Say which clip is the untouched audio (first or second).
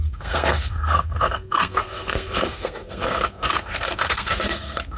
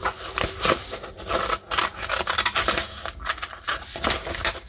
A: second